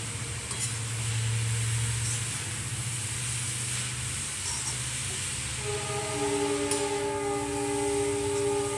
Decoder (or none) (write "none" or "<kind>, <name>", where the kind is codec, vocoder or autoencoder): none